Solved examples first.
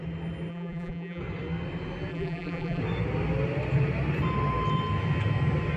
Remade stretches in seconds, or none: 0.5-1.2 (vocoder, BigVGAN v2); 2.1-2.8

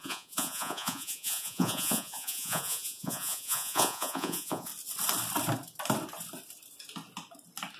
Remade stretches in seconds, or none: 0.0-4.7 (vocoder, Vocos)

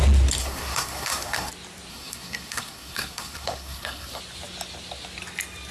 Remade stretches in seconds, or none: 0.4-1.5 (codec, SNAC); 1.9-4.2